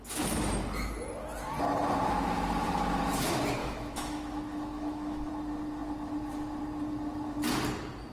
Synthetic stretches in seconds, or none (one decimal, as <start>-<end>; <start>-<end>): 3.6-5.3